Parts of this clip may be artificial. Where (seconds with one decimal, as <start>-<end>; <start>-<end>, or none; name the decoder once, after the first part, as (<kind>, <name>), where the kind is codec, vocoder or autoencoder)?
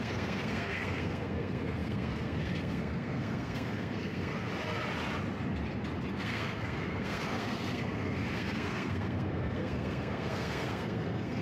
0.0-4.5 (codec, SNAC); 6.1-11.4